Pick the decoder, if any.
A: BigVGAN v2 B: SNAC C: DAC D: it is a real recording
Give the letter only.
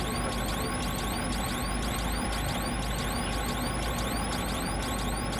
D